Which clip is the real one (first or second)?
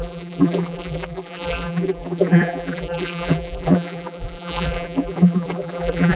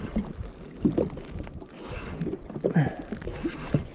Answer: second